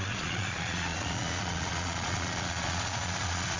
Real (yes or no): no